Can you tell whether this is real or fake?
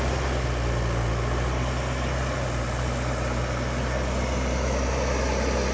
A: real